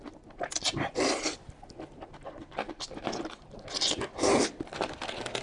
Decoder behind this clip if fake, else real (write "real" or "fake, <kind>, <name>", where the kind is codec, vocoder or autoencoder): real